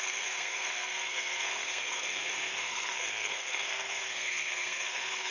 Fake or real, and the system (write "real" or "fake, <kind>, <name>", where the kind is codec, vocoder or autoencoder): fake, codec, SNAC